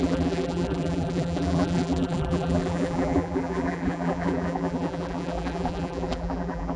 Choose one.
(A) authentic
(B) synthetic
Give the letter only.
B